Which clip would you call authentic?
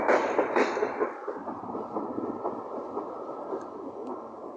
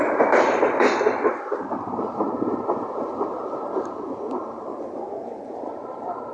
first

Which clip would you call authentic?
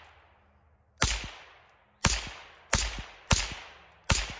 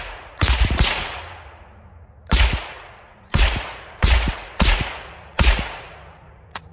first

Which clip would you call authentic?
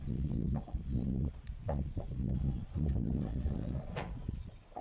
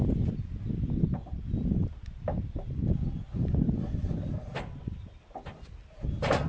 second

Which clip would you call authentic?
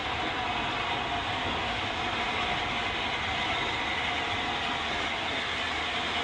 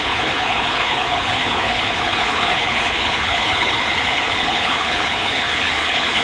first